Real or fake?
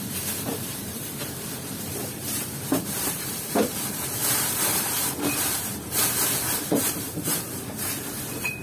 fake